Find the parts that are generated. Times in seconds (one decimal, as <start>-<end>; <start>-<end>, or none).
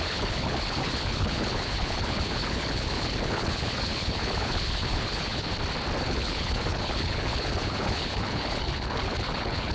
0.0-5.5; 6.0-9.7